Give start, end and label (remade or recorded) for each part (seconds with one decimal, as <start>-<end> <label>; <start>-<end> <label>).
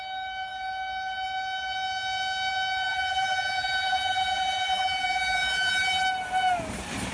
0.0-2.9 recorded; 2.9-6.0 remade; 6.0-7.1 recorded